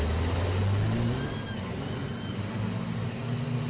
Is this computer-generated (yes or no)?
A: no